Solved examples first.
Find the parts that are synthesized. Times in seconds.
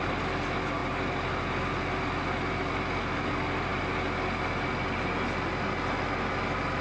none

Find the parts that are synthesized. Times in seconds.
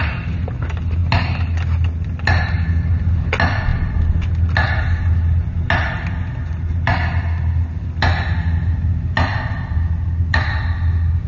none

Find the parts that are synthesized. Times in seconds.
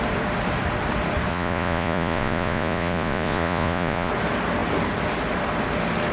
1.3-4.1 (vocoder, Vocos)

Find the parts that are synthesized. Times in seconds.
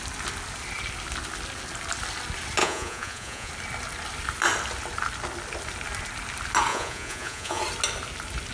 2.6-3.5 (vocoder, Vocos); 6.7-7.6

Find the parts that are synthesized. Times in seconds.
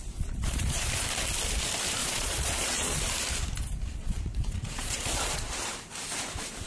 0.0-0.9 (vocoder, Vocos); 2.0-3.0; 4.0-5.4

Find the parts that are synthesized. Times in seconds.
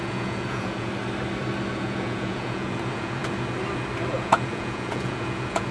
0.0-0.9 (vocoder, Vocos); 1.7-3.2; 4.1-5.7